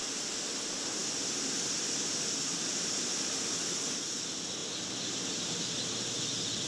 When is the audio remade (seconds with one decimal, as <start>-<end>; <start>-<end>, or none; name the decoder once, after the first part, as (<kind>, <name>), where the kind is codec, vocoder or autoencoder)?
none